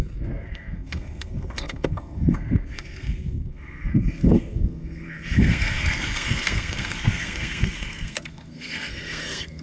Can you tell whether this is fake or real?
fake